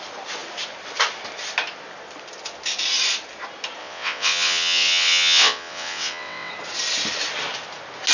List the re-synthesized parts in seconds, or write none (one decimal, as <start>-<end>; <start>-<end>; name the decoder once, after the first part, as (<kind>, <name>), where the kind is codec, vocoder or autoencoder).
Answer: 3.8-6.5 (vocoder, WaveNeXt)

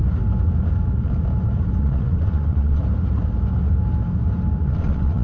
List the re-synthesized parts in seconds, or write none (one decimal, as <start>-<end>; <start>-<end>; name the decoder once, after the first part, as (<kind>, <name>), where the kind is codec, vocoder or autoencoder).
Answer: 1.8-2.8 (vocoder, WaveNeXt); 4.6-5.2

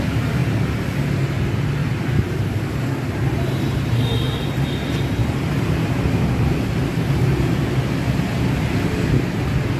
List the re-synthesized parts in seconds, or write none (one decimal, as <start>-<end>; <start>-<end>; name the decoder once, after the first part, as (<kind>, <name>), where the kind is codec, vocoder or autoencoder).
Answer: 1.8-4.8 (vocoder, BigVGAN v2); 5.2-6.0

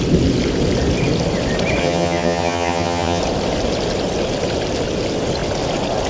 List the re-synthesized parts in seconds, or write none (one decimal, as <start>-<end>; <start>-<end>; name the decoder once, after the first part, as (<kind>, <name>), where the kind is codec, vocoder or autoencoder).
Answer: 1.8-3.2 (vocoder, HiFi-GAN)

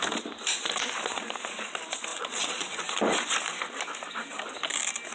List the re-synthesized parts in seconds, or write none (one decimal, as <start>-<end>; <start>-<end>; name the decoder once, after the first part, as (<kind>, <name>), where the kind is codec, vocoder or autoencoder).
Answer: 2.1-2.8 (vocoder, Vocos)

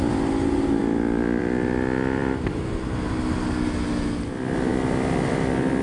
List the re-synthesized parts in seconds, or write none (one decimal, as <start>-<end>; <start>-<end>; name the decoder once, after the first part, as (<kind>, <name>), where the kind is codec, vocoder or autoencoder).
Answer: none